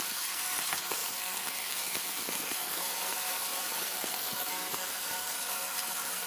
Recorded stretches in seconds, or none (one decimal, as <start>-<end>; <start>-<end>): none